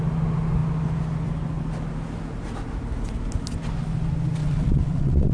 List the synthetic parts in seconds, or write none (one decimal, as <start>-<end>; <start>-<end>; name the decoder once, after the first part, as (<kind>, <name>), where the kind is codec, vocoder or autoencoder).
4.4-5.3 (vocoder, WaveNeXt)